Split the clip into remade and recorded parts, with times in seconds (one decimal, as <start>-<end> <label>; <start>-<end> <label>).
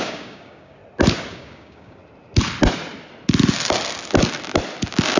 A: 0.0-0.8 remade; 0.8-1.3 recorded; 1.3-2.0 remade; 2.0-5.2 recorded